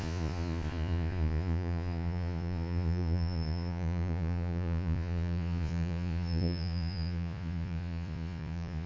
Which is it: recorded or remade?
remade